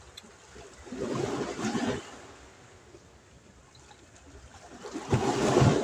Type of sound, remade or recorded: remade